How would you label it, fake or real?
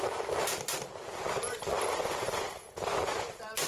real